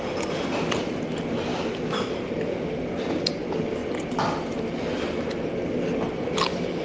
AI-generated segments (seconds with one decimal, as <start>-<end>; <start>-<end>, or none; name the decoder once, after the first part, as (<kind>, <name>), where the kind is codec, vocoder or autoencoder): 1.5-2.2 (autoencoder, DAC-VAE)